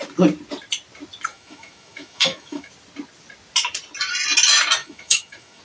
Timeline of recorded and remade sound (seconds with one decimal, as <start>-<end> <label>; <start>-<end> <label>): 0.0-1.3 recorded; 1.3-2.7 remade; 2.7-4.8 recorded; 4.8-5.6 remade

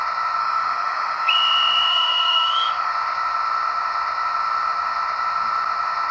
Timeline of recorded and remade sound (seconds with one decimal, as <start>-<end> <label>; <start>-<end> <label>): 0.0-0.4 recorded; 0.4-1.3 remade; 1.3-1.9 recorded; 1.9-2.9 remade; 2.9-6.1 recorded